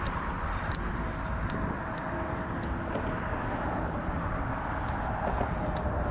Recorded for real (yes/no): yes